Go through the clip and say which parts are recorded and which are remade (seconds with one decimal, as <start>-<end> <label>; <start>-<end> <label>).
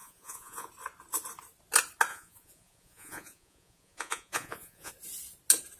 0.0-0.7 remade; 0.7-2.1 recorded; 2.1-4.9 remade; 4.9-5.8 recorded